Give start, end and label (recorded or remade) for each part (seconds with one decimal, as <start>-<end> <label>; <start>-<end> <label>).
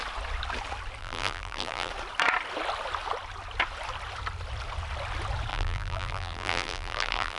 0.0-1.0 recorded; 1.0-1.9 remade; 1.9-5.5 recorded; 5.5-7.4 remade